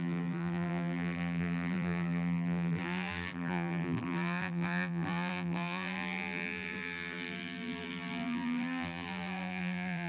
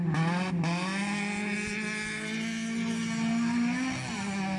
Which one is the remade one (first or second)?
first